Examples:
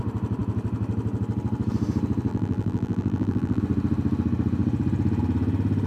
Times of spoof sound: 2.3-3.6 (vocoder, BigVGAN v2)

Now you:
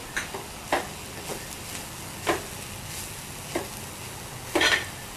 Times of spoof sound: none